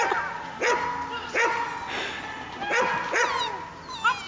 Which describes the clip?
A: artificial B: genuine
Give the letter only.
B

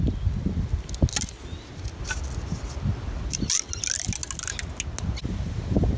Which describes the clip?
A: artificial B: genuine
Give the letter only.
B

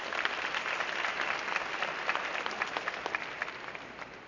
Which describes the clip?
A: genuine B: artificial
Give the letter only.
A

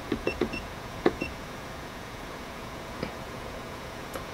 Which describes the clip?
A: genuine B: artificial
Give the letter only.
B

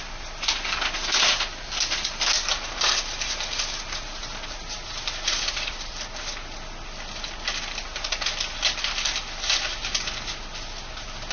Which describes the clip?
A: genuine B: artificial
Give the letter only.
A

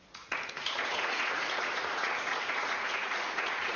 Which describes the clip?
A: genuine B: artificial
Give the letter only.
B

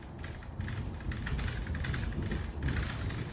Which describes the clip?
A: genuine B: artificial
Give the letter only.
A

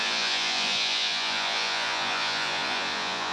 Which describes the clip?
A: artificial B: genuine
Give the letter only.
A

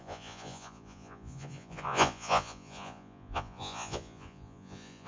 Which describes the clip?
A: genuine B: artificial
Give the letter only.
B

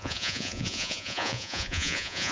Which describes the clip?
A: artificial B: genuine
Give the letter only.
A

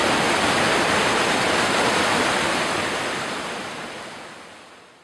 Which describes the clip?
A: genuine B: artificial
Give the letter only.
A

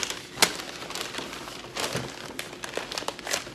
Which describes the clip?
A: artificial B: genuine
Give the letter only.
B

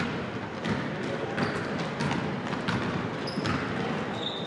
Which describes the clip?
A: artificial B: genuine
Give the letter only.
B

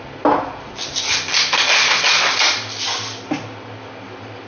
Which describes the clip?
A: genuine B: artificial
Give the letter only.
A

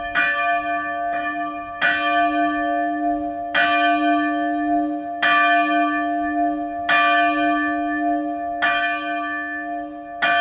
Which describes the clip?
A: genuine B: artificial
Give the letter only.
A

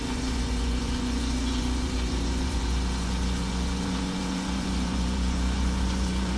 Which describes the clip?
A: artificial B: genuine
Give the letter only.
A